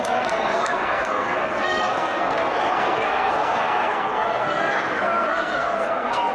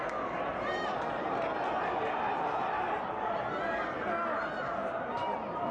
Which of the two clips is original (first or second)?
second